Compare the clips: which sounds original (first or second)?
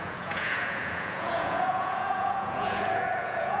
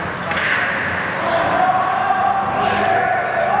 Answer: second